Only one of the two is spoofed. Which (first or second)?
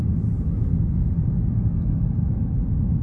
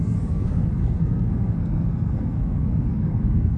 second